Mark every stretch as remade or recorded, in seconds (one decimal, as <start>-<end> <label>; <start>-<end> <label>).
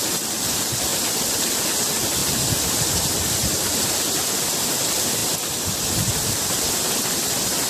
0.0-0.9 recorded; 0.9-1.6 remade; 1.6-5.2 recorded; 5.2-6.9 remade; 6.9-7.7 recorded